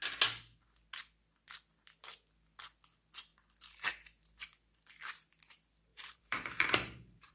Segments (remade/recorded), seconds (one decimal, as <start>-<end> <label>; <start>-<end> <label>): 0.0-5.9 recorded; 5.9-7.3 remade